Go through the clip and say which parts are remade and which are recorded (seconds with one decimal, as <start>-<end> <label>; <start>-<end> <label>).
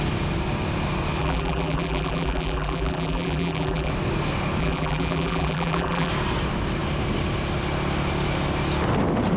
0.0-1.2 recorded; 1.2-3.9 remade; 3.9-4.6 recorded; 4.6-6.1 remade; 6.1-9.4 recorded